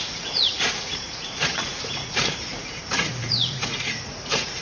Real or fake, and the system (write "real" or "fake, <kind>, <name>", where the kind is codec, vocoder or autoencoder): fake, vocoder, Vocos